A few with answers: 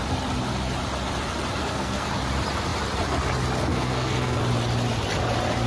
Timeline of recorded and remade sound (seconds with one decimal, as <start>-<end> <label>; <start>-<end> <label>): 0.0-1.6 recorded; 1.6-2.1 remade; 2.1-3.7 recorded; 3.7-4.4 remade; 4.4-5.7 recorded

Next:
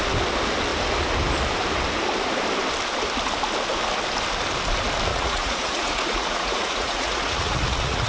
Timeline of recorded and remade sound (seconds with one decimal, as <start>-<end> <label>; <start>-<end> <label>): 0.0-5.1 recorded; 5.1-8.1 remade

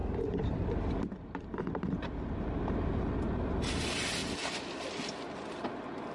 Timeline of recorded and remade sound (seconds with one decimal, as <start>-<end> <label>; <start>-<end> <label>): 0.0-2.6 remade; 2.6-4.2 recorded; 4.2-4.9 remade; 4.9-6.1 recorded

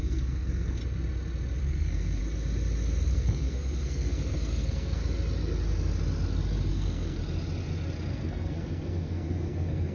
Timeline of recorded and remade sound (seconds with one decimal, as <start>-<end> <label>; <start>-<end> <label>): 0.0-0.8 remade; 0.8-1.6 recorded; 1.6-2.2 remade; 2.2-3.1 recorded; 3.1-5.0 remade; 5.0-6.7 recorded; 6.7-7.2 remade; 7.2-8.1 recorded; 8.1-9.9 remade

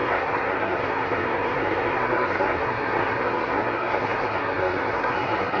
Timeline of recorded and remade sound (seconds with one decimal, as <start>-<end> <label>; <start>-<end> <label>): 0.0-5.6 remade

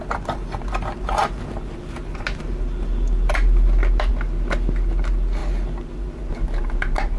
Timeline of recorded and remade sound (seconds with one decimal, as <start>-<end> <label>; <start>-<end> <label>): 0.0-7.2 recorded

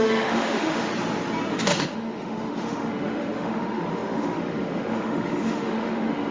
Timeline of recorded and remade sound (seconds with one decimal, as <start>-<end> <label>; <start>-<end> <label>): 0.0-0.9 remade; 0.9-1.5 recorded; 1.5-6.3 remade

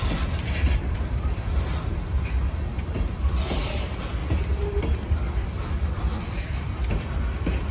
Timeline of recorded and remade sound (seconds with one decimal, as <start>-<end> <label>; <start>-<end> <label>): 0.0-1.9 remade; 1.9-3.1 recorded; 3.1-4.2 remade; 4.2-4.8 recorded; 4.8-7.7 remade